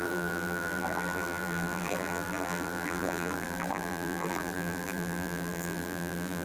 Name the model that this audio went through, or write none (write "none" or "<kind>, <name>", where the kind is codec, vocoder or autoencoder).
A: vocoder, BigVGAN v2